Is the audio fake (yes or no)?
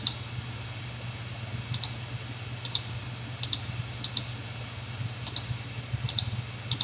no